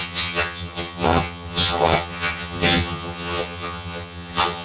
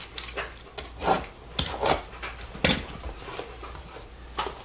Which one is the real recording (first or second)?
second